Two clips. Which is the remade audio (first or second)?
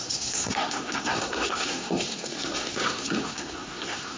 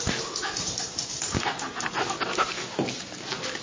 first